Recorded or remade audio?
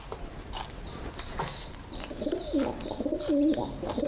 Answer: recorded